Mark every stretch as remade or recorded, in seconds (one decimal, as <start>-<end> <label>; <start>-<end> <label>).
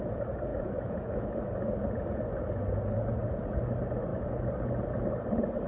0.0-0.5 recorded; 0.5-1.5 remade; 1.5-5.7 recorded